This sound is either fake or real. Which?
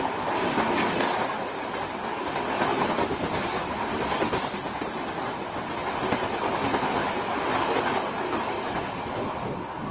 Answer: real